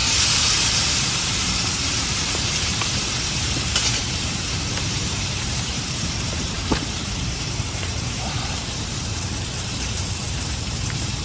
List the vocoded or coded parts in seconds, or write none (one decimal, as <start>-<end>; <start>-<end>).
0.0-11.2